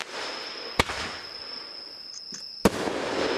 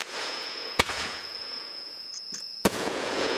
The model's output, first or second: second